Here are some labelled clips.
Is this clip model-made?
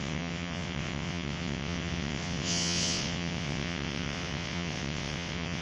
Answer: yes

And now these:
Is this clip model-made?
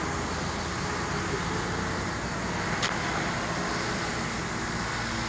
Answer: no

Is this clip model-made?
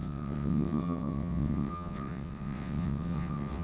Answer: yes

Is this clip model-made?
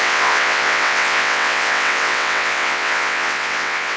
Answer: yes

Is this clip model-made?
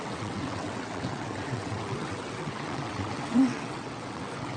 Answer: yes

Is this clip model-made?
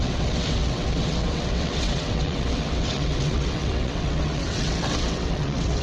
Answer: yes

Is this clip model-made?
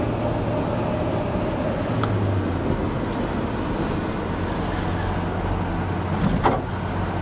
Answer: no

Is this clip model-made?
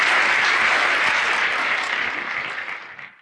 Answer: no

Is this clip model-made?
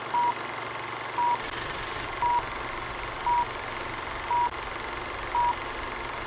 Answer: no